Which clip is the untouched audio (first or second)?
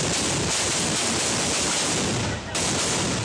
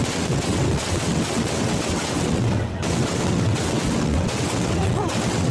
first